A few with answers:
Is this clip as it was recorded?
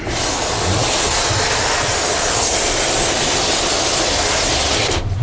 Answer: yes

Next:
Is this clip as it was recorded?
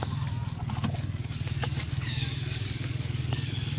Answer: no